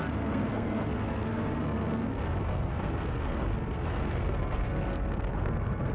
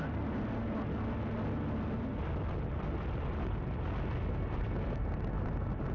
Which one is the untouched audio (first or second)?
second